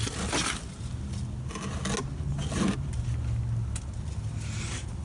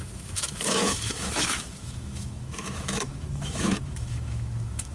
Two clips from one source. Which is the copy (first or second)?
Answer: second